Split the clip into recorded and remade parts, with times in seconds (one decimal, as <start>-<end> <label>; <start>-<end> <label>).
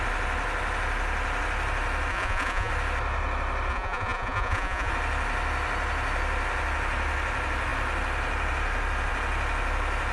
0.0-2.1 recorded; 2.1-2.7 remade; 2.7-3.7 recorded; 3.7-4.9 remade; 4.9-10.1 recorded